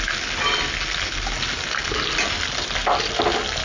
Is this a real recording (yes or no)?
yes